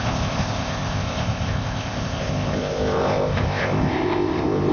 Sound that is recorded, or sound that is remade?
remade